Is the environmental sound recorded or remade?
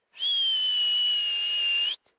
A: recorded